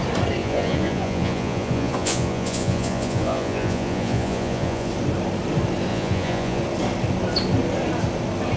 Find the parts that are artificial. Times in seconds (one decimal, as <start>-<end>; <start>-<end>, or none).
0.4-4.9; 5.9-6.6